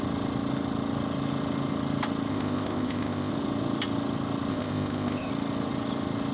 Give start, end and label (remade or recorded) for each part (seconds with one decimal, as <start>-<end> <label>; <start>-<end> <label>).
0.0-2.3 recorded; 2.3-3.3 remade; 3.3-4.5 recorded; 4.5-5.3 remade; 5.3-6.3 recorded